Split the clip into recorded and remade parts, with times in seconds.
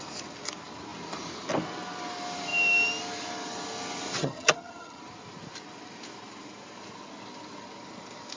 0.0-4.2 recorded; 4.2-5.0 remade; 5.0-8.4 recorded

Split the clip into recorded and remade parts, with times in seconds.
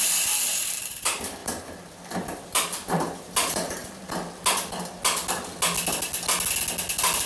0.0-1.4 remade; 1.4-2.1 recorded; 2.1-3.8 remade; 3.8-7.3 recorded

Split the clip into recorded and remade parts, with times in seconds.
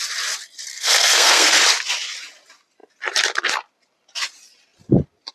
0.0-0.7 recorded; 0.7-1.6 remade; 1.6-5.3 recorded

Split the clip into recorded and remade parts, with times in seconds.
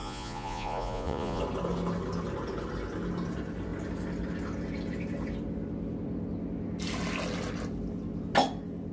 0.0-1.4 remade; 1.4-8.9 recorded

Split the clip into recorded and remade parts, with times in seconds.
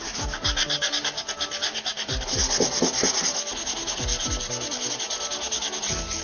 0.0-6.2 recorded